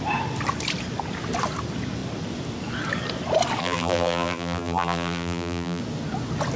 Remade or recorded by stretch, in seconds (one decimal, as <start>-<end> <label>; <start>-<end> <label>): 0.0-3.6 recorded; 3.6-5.8 remade; 5.8-6.6 recorded